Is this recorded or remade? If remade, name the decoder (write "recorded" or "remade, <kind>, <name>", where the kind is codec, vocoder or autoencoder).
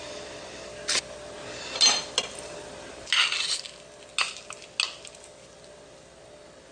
recorded